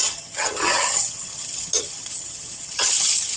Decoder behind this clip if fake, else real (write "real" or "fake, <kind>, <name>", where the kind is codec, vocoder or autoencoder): fake, vocoder, HiFi-GAN